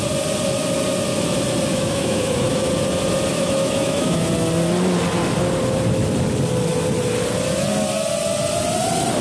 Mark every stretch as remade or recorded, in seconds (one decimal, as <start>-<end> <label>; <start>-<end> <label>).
0.0-1.7 recorded; 1.7-2.7 remade; 2.7-3.3 recorded; 3.3-4.3 remade; 4.3-9.2 recorded